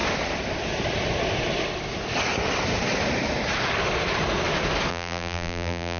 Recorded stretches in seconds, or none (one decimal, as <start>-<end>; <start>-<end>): 0.0-4.9